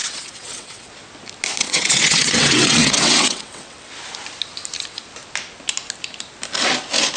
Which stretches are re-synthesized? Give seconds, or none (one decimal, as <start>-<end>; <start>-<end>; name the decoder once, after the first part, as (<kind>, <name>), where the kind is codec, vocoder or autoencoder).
0.0-0.9 (vocoder, WaveNeXt); 1.6-3.9

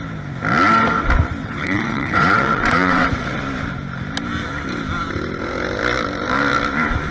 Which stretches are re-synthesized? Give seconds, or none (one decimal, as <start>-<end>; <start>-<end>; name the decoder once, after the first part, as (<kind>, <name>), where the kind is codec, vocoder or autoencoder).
1.4-3.4 (vocoder, WaveNeXt)